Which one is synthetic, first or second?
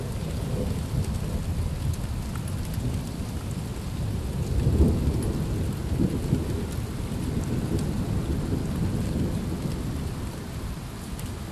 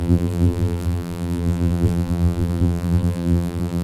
second